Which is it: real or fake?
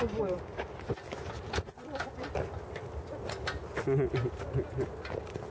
real